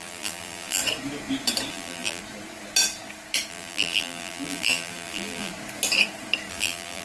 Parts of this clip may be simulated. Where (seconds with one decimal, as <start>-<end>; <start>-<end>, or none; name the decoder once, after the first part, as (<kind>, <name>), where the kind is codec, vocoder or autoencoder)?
0.0-0.8 (vocoder, BigVGAN v2); 1.7-2.2; 3.5-5.5; 6.5-7.0